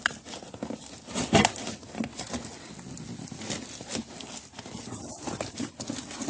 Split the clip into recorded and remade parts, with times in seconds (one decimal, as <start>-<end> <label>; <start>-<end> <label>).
0.0-6.3 recorded